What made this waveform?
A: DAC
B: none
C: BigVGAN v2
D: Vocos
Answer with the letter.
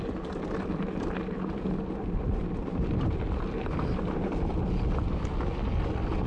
B